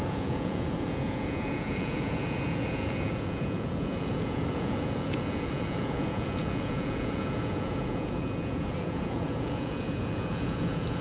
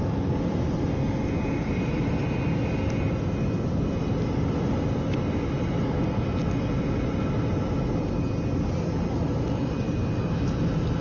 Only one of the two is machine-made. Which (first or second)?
first